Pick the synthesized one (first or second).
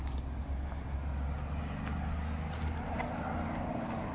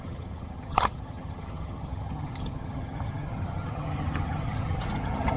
second